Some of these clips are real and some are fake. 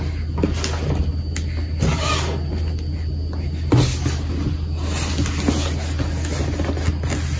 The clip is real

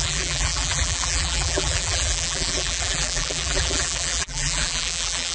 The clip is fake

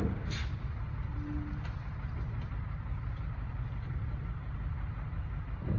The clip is real